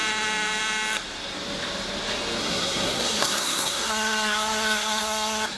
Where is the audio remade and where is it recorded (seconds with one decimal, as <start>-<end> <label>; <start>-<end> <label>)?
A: 0.0-2.4 recorded; 2.4-5.6 remade